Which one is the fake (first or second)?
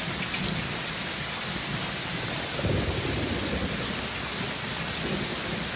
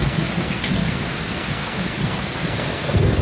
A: second